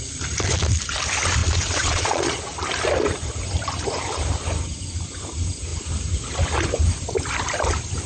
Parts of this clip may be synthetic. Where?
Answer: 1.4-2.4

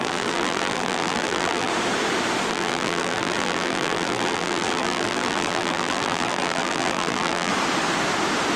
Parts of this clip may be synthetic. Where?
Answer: 0.0-1.7; 2.5-7.5

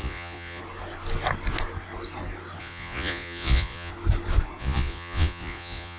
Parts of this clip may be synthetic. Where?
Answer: 0.0-0.6; 2.6-3.9; 4.6-6.0

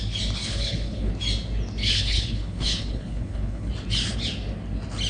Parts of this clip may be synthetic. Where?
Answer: 0.4-1.1; 1.8-3.7

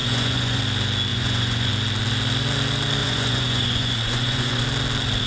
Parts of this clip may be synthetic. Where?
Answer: 0.0-0.6; 1.1-1.7; 3.0-4.6